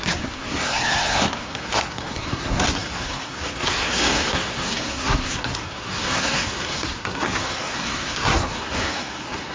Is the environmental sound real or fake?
fake